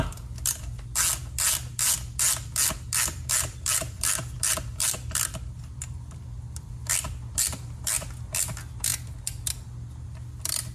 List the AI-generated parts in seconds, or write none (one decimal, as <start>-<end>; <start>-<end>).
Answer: none